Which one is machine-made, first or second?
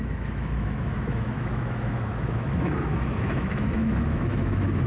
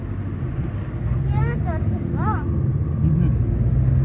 first